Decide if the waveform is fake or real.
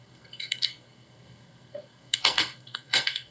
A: fake